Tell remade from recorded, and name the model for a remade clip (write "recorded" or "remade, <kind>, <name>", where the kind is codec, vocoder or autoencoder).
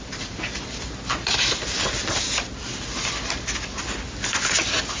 recorded